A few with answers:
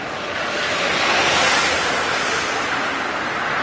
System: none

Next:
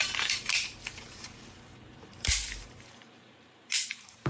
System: vocoder, BigVGAN v2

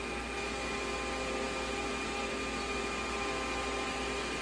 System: none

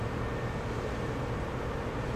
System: vocoder, BigVGAN v2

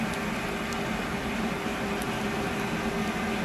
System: none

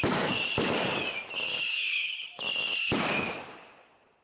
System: none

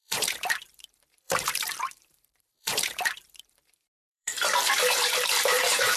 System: vocoder, BigVGAN v2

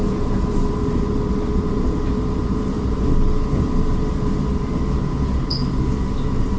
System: none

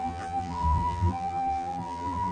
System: vocoder, BigVGAN v2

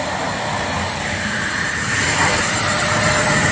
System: vocoder, BigVGAN v2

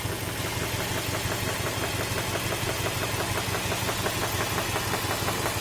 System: none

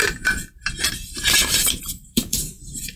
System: vocoder, BigVGAN v2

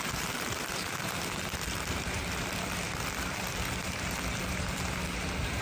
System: vocoder, BigVGAN v2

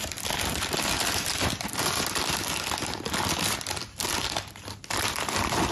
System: none